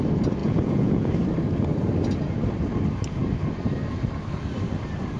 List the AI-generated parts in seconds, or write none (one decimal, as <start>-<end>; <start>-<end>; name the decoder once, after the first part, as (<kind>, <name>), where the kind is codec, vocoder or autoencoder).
0.4-1.1 (vocoder, Vocos)